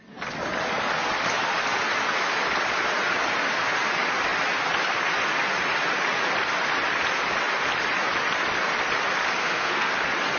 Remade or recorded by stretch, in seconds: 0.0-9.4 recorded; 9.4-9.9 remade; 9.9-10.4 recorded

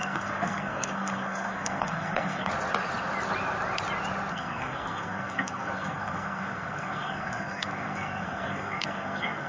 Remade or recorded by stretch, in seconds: 0.0-2.5 remade; 2.5-4.3 recorded; 4.3-9.5 remade

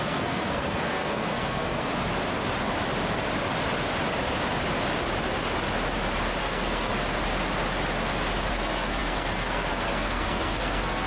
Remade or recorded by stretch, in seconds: 0.0-1.9 remade; 1.9-6.4 recorded; 6.4-6.9 remade; 6.9-8.5 recorded; 8.5-11.1 remade

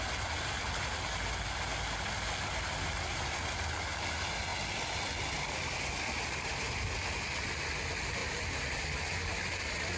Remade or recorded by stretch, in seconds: 0.0-10.0 recorded

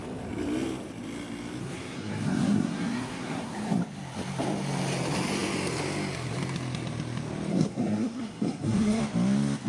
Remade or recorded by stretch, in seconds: 0.0-1.6 recorded; 1.6-3.8 remade; 3.8-7.5 recorded; 7.5-9.0 remade; 9.0-9.7 recorded

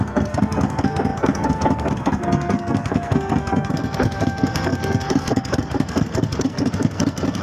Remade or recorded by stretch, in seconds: 0.0-7.4 remade

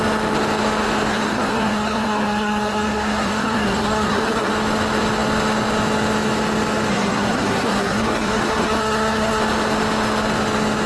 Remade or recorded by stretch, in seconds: 0.0-1.1 recorded; 1.1-4.5 remade; 4.5-6.9 recorded; 6.9-9.4 remade; 9.4-10.9 recorded